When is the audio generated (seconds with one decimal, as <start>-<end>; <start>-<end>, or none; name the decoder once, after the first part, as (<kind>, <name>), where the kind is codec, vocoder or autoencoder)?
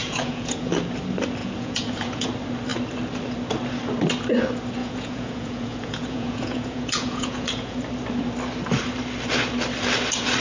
0.0-0.7 (vocoder, Vocos); 1.4-2.3; 4.8-7.8